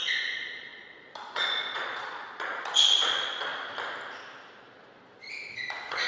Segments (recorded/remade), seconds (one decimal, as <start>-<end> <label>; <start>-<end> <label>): 0.0-3.5 remade; 3.5-5.3 recorded; 5.3-6.1 remade